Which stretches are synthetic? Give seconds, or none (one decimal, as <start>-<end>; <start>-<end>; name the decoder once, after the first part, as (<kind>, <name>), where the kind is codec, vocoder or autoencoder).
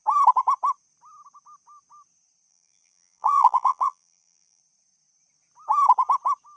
2.5-4.6 (vocoder, BigVGAN v2)